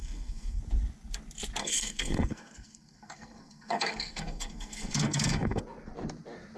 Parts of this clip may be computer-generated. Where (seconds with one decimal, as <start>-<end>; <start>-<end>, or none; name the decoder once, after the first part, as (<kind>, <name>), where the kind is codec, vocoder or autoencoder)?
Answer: 0.0-0.6 (codec, SNAC); 1.6-5.6